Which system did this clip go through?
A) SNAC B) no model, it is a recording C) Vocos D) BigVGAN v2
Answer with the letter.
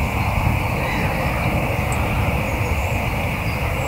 B